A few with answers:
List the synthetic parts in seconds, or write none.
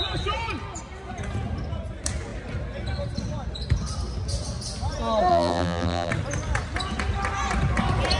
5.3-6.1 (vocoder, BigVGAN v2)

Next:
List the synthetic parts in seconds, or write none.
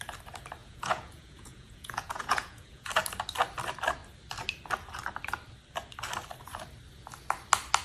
0.6-2.9 (vocoder, Vocos)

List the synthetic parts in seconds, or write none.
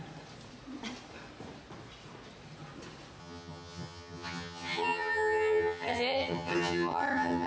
3.2-7.5 (vocoder, HiFi-GAN)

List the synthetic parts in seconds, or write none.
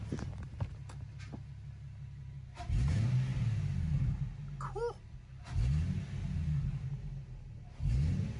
none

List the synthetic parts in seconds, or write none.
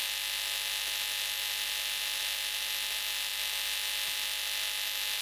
none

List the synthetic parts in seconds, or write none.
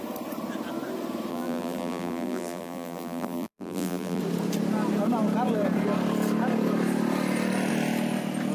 1.3-4.2 (vocoder, BigVGAN v2)